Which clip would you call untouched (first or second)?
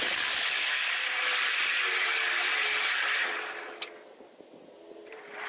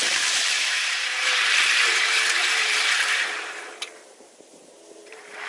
first